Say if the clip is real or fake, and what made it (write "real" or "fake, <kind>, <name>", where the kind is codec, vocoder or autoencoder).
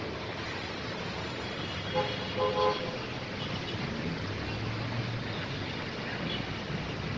real